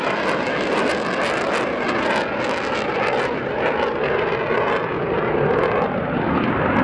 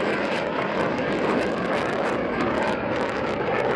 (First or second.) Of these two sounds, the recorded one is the first